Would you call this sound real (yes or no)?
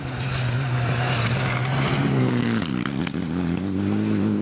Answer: yes